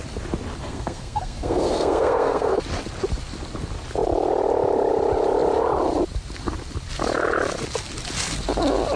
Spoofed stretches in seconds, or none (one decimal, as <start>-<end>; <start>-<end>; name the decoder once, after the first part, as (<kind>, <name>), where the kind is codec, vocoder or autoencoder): 0.6-2.6 (codec, SNAC)